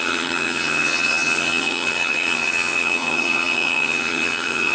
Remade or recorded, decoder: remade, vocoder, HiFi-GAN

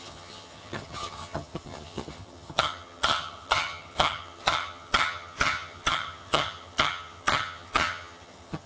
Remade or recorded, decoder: remade, vocoder, HiFi-GAN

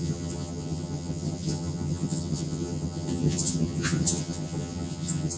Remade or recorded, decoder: remade, vocoder, HiFi-GAN